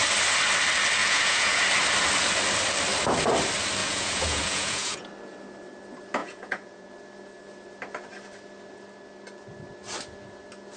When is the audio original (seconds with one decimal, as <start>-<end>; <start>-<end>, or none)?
0.0-1.0; 1.6-3.8; 5.1-6.2; 6.9-10.8